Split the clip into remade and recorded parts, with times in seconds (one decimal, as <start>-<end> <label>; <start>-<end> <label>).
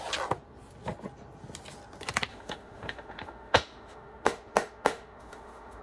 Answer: 0.0-2.3 recorded; 2.3-5.8 remade